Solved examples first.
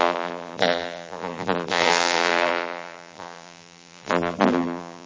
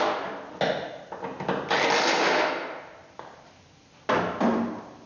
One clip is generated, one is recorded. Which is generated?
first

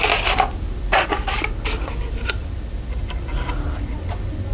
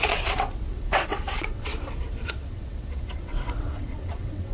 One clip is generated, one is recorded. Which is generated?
second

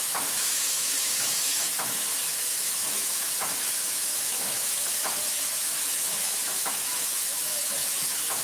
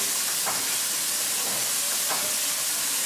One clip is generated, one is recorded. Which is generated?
first